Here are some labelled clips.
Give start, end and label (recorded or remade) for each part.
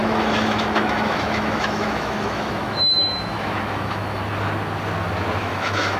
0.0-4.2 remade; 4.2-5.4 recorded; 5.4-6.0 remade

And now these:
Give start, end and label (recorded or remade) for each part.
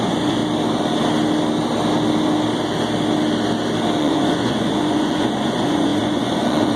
0.0-0.4 remade; 0.4-4.0 recorded; 4.0-6.8 remade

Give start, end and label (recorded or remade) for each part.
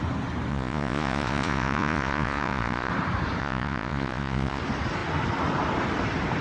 0.0-0.5 recorded; 0.5-2.9 remade; 2.9-3.4 recorded; 3.4-4.6 remade; 4.6-6.4 recorded